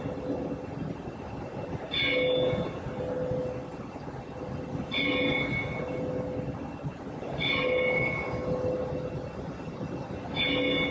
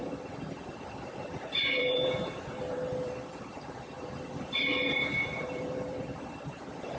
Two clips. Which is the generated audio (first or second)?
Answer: second